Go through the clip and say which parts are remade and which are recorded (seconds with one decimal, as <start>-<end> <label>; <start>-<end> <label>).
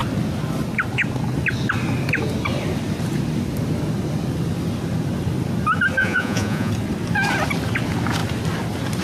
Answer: 0.0-6.0 recorded; 6.0-6.7 remade; 6.7-9.0 recorded